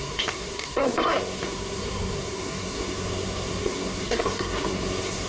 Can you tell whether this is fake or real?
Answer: fake